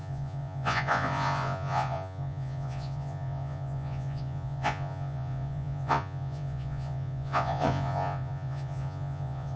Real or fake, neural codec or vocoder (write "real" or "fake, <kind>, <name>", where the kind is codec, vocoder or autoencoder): fake, vocoder, Vocos